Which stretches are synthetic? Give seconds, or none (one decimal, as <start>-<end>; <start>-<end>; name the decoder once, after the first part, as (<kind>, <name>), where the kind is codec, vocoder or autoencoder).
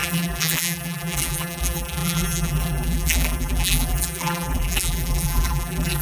0.0-6.0 (vocoder, BigVGAN v2)